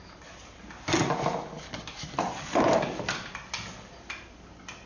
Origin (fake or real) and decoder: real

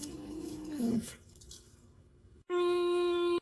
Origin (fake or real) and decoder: fake, codec, DAC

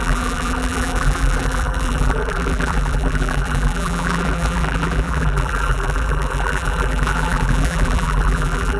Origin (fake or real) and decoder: fake, vocoder, BigVGAN v2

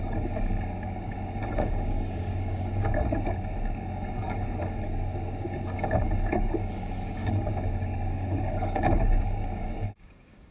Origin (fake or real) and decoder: fake, codec, DAC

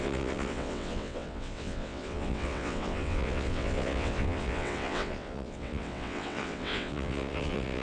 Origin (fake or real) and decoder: fake, vocoder, WaveNeXt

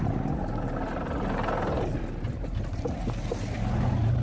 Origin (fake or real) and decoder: real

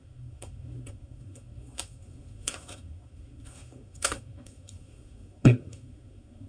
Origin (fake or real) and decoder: fake, codec, SNAC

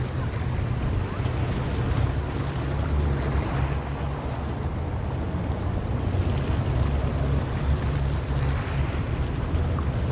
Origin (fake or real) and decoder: real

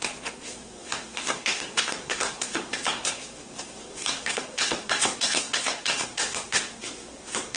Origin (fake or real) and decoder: fake, codec, SNAC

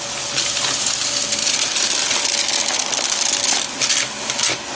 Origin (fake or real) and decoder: real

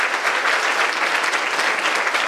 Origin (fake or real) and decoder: real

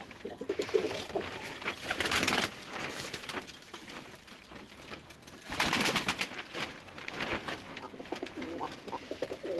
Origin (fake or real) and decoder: fake, vocoder, BigVGAN v2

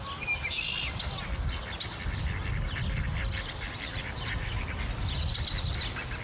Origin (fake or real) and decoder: real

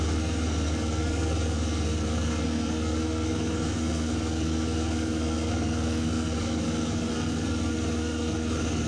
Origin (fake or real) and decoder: fake, codec, SNAC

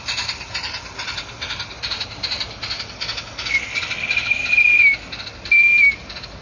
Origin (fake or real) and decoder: real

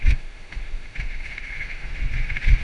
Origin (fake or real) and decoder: fake, autoencoder, DAC-VAE